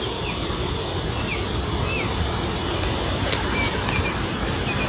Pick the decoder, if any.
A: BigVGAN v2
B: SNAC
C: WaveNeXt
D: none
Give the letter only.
D